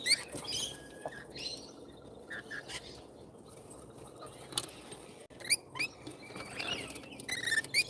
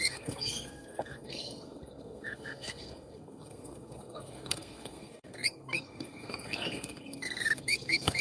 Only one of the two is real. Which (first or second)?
first